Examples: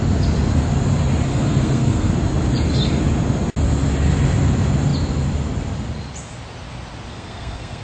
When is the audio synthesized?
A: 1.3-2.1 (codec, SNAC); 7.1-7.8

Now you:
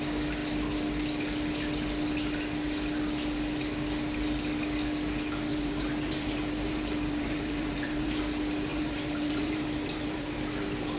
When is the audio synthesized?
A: 5.5-8.2 (vocoder, BigVGAN v2); 8.7-10.3